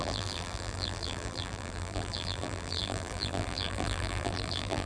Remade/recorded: remade